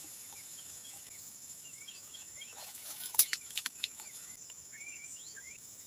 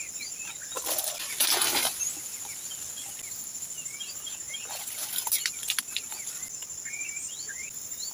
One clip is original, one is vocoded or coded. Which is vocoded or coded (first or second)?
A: first